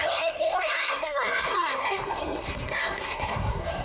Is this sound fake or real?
fake